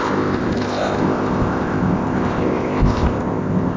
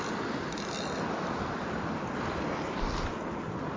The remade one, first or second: first